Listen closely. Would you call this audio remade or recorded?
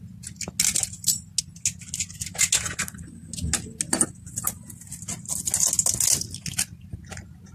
recorded